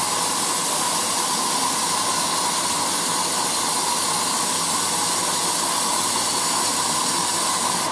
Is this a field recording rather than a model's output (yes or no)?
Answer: yes